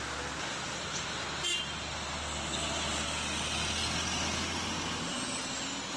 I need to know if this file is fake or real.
real